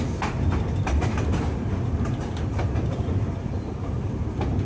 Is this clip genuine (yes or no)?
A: yes